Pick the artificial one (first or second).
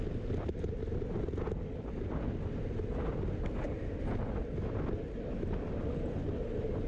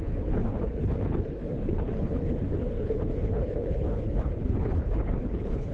second